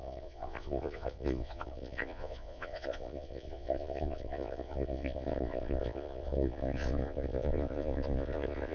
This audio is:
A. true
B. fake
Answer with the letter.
B